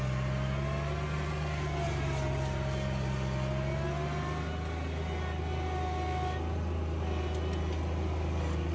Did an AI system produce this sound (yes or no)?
no